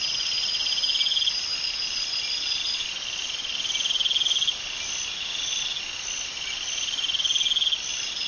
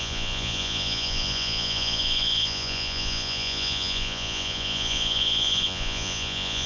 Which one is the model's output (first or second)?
second